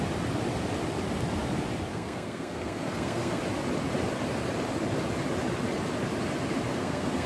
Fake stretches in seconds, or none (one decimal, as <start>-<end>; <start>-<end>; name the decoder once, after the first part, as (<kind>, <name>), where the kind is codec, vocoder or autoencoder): 1.9-3.4 (codec, SNAC); 6.8-7.3